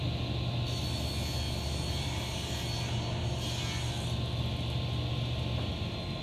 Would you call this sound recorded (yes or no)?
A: yes